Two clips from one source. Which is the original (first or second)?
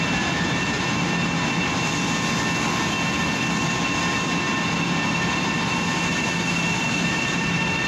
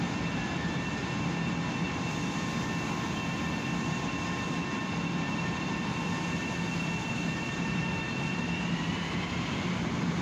first